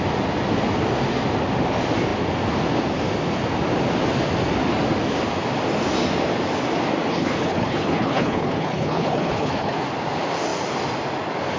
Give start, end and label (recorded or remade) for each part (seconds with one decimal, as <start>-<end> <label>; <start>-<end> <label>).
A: 0.0-7.1 recorded; 7.1-9.8 remade; 9.8-11.6 recorded